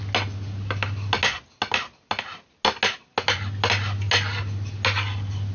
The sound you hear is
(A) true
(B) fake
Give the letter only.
A